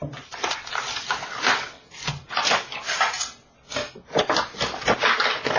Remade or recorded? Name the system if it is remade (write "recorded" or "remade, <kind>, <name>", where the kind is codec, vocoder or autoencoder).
recorded